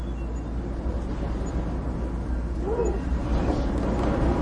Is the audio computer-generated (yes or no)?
no